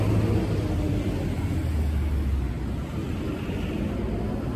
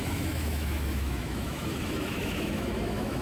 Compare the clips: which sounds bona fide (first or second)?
first